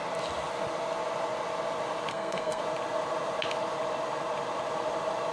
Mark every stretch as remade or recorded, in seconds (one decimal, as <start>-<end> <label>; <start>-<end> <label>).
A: 0.0-2.1 recorded; 2.1-2.6 remade; 2.6-5.3 recorded